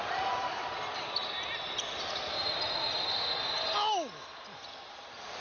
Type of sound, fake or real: real